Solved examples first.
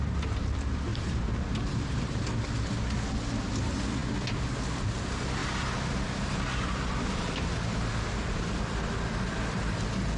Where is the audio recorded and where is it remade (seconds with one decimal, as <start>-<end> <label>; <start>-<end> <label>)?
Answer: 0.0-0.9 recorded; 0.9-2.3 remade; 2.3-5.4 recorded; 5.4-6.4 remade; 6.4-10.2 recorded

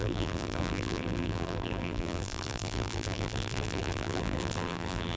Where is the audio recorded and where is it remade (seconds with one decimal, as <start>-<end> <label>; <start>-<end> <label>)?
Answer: 0.0-5.2 remade

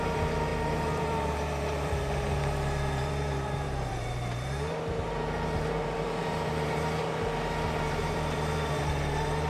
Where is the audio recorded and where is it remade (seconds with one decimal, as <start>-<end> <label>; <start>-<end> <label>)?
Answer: 0.0-9.5 remade